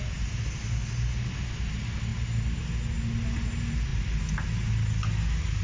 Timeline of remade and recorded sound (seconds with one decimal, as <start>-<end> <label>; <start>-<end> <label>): 0.0-5.6 recorded